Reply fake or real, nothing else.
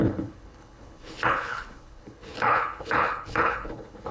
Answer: fake